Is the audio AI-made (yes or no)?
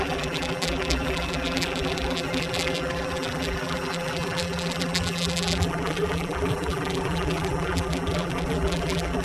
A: yes